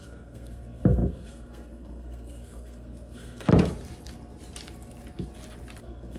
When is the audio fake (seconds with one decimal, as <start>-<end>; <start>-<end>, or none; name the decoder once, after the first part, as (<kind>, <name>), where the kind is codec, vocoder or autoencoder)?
0.0-3.5 (codec, SNAC); 5.8-6.2